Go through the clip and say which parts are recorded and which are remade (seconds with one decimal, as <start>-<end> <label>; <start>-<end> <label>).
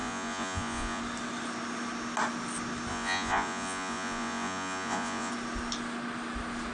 0.0-1.0 remade; 1.0-2.9 recorded; 2.9-5.3 remade; 5.3-6.7 recorded